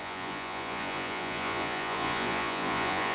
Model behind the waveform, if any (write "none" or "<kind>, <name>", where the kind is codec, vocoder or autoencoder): vocoder, Vocos